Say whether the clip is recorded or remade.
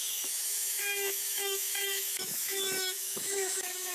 remade